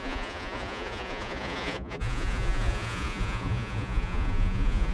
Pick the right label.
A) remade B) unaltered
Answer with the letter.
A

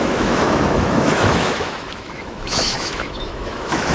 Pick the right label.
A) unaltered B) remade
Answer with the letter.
B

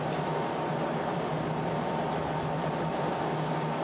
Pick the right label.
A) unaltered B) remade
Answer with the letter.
A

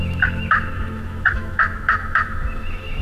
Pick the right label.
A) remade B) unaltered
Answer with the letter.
A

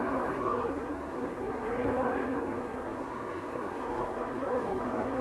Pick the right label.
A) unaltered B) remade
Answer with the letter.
B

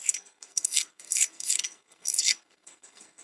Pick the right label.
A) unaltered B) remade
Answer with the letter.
B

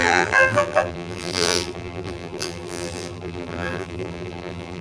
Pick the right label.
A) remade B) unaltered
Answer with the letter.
A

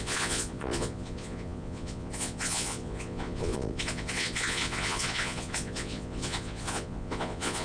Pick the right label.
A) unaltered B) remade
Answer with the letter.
B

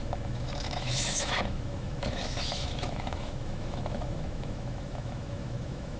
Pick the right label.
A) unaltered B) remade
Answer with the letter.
B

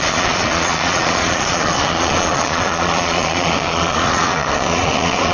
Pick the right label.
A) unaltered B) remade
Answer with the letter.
B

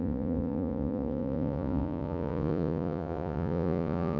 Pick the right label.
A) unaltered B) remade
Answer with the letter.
B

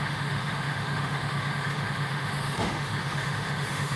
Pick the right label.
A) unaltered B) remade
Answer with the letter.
B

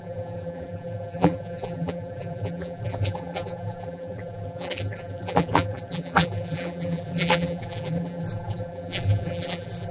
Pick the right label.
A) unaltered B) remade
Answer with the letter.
B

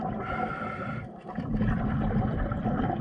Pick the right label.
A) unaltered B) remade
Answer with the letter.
B